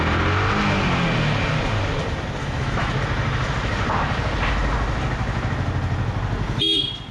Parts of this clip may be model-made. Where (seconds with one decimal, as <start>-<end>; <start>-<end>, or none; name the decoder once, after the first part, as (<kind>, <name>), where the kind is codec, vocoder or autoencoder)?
2.4-2.9 (autoencoder, DAC-VAE)